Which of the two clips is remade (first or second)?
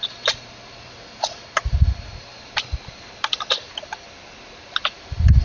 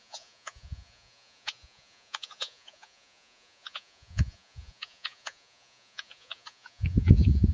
second